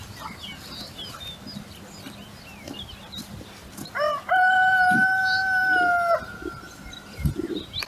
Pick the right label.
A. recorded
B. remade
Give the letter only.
A